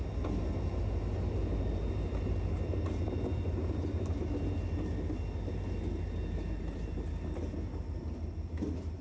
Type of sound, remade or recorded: recorded